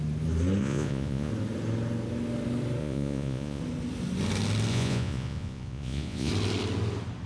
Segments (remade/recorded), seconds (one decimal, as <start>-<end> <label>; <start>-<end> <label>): 0.0-0.6 recorded; 0.6-1.3 remade; 1.3-2.8 recorded; 2.8-3.6 remade; 3.6-4.7 recorded; 4.7-6.3 remade; 6.3-7.3 recorded